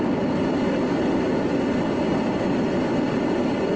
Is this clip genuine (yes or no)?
yes